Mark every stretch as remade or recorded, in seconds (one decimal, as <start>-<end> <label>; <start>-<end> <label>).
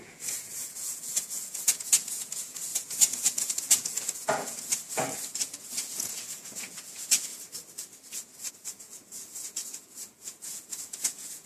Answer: 0.0-4.7 remade; 4.7-5.4 recorded; 5.4-7.3 remade; 7.3-8.5 recorded; 8.5-11.5 remade